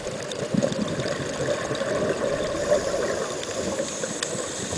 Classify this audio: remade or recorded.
recorded